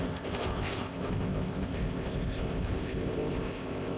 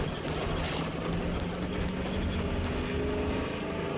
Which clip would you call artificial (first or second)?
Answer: first